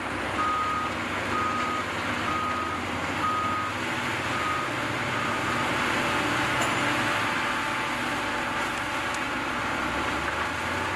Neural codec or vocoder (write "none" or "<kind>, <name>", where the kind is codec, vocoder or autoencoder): none